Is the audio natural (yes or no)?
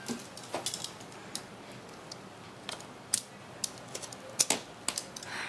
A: yes